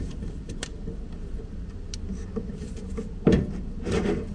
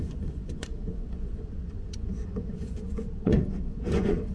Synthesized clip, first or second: second